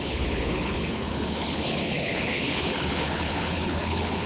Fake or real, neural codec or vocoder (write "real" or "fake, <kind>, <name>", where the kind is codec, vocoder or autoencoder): fake, codec, HILCodec